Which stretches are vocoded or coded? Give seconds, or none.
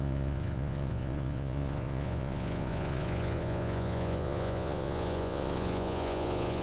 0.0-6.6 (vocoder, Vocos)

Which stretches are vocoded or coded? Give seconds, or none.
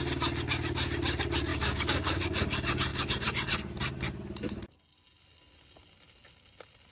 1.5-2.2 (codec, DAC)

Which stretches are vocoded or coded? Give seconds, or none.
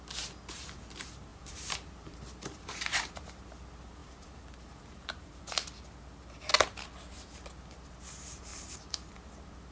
1.3-3.4 (vocoder, BigVGAN v2); 4.0-5.4; 8.5-9.1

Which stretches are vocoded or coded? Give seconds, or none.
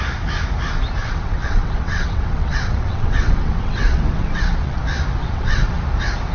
1.0-4.8 (vocoder, WaveNeXt); 5.2-5.8